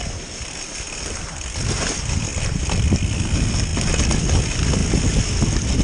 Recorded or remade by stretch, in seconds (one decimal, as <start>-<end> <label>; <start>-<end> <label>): 0.0-2.3 recorded; 2.3-3.0 remade; 3.0-3.7 recorded; 3.7-4.2 remade; 4.2-5.8 recorded